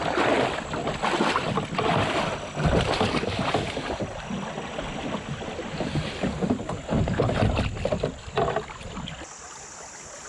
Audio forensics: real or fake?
real